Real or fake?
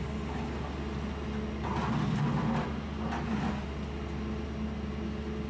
real